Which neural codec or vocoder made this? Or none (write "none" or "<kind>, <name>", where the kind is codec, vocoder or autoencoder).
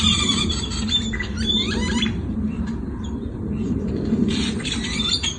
vocoder, BigVGAN v2